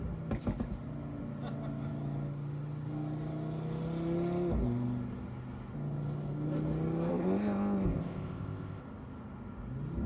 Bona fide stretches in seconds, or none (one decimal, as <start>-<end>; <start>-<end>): 0.0-7.1; 8.8-10.1